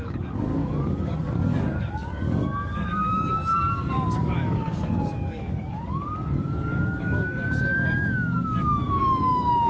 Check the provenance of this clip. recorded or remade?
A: remade